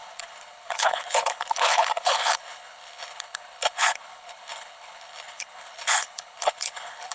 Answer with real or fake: fake